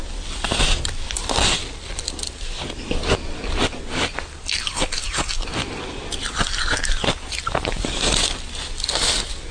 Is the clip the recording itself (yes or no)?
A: yes